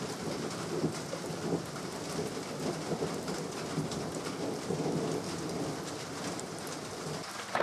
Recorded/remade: recorded